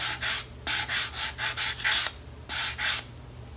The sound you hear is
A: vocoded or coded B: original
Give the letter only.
B